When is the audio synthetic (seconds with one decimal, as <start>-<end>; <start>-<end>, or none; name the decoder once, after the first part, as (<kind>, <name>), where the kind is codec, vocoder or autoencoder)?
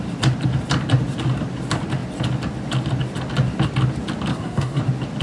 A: 4.3-4.8 (codec, SNAC)